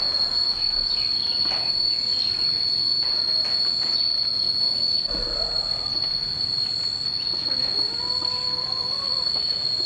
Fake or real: real